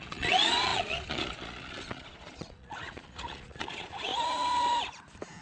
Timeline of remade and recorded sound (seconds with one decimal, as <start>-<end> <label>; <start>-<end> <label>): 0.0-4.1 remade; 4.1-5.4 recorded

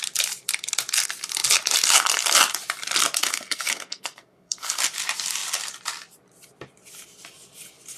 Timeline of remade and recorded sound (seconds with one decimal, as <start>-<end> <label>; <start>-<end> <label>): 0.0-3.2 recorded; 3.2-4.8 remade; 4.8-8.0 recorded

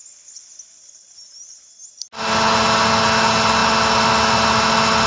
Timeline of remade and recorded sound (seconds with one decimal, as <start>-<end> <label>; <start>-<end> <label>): 0.0-5.1 recorded